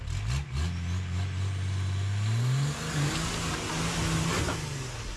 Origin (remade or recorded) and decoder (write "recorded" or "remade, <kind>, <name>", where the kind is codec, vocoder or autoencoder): recorded